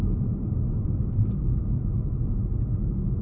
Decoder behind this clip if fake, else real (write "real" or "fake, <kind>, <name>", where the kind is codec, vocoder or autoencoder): real